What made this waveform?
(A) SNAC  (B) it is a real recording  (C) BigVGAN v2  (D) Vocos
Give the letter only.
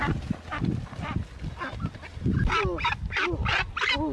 B